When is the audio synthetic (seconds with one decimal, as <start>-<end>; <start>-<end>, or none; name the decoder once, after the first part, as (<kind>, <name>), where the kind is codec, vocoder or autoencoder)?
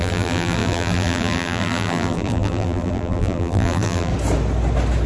0.0-4.1 (vocoder, BigVGAN v2)